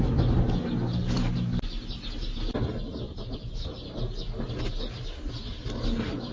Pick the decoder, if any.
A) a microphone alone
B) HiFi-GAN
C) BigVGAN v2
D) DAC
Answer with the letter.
A